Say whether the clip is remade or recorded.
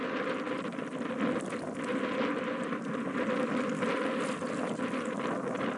recorded